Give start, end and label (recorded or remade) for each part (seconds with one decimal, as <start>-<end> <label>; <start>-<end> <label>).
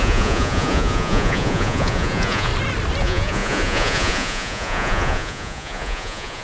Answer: 0.0-2.5 remade; 2.5-3.0 recorded; 3.0-6.4 remade